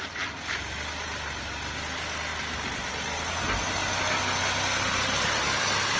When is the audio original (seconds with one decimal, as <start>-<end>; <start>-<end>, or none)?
0.0-6.0